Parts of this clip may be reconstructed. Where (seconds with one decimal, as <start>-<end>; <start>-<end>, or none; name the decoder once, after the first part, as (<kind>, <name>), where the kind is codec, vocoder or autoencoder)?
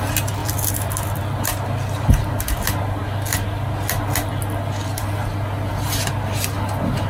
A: 0.4-1.2 (vocoder, BigVGAN v2)